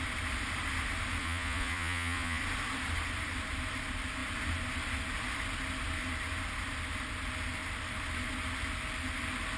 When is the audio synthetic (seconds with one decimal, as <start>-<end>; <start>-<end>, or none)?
1.2-2.4